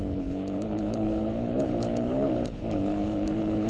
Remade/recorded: remade